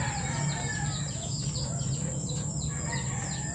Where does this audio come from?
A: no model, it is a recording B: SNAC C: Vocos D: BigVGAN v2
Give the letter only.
A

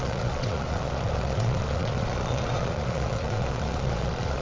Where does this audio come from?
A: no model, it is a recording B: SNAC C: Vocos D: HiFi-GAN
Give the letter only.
C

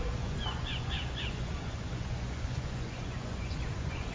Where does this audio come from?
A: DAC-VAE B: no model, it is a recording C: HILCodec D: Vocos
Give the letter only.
D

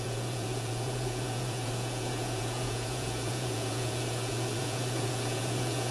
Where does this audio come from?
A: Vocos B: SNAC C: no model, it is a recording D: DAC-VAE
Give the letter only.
A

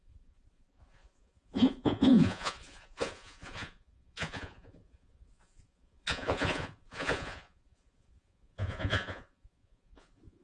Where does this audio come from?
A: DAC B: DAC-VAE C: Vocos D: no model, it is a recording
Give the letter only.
C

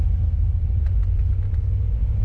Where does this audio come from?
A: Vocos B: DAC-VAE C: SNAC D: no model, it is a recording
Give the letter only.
D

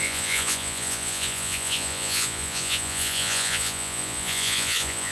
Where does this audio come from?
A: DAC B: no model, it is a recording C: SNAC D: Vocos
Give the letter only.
D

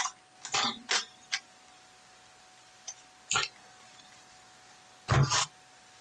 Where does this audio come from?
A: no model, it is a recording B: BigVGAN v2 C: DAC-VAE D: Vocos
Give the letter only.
A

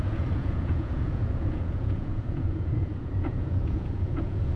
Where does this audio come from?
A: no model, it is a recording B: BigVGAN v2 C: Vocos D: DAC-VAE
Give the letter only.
C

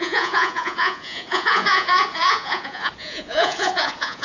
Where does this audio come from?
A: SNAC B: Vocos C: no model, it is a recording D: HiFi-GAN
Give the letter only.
B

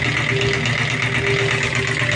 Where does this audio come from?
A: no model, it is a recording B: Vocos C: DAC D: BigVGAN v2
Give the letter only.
A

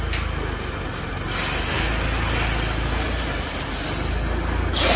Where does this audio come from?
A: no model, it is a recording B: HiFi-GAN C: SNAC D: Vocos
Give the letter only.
A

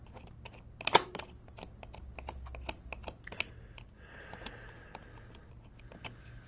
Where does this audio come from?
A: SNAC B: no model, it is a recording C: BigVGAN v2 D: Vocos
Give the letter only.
B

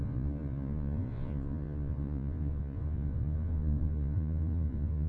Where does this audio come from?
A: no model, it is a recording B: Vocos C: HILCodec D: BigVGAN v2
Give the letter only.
B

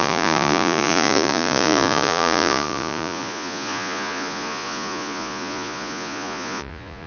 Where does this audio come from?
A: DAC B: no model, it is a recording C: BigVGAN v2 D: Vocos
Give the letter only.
D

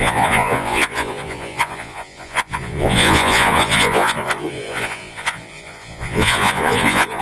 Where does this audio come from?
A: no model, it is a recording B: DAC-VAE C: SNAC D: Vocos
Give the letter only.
D